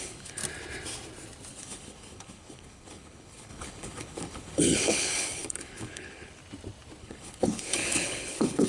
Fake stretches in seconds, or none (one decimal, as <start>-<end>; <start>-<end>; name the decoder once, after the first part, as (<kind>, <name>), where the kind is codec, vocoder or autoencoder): 0.0-0.4 (codec, HILCodec); 1.5-6.4; 7.0-8.7